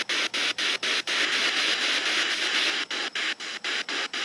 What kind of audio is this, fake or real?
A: real